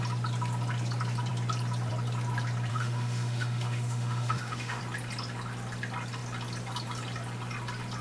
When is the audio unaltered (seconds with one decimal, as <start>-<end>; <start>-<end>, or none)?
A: 0.0-2.7; 4.8-8.0